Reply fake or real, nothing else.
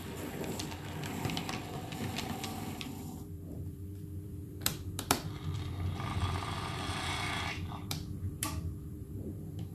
fake